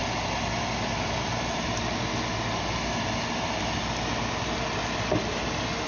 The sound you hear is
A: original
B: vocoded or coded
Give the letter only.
A